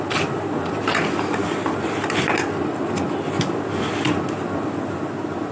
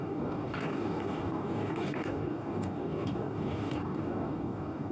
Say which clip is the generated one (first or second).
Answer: second